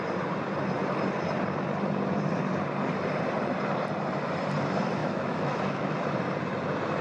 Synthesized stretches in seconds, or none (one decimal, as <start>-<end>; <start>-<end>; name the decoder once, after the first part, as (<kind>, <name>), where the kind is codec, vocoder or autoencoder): 5.0-6.0 (autoencoder, DAC-VAE)